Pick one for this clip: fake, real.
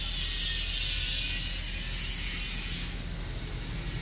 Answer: real